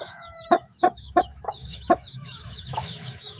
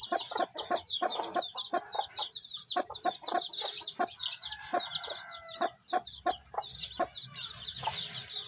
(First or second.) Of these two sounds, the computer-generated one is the first